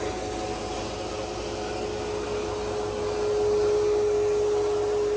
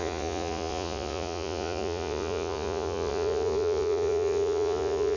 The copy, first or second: second